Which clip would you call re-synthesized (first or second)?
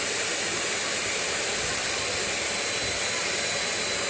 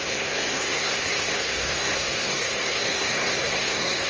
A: second